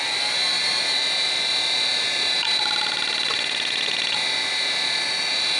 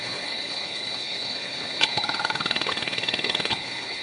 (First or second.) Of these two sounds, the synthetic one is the second